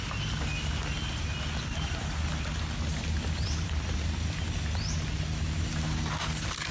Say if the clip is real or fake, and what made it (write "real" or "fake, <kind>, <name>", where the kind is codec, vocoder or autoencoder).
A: real